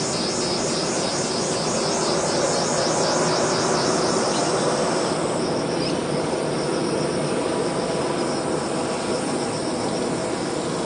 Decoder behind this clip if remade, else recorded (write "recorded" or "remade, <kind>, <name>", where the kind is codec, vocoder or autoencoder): recorded